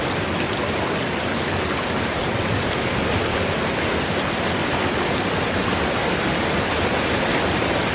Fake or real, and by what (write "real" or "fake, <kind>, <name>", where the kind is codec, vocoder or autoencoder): real